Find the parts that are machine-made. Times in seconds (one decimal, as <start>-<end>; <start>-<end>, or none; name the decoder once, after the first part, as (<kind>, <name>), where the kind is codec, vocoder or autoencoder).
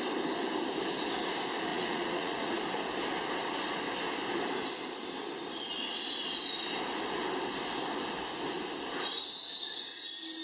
1.7-2.6 (vocoder, Vocos)